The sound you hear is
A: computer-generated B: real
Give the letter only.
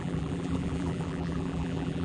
A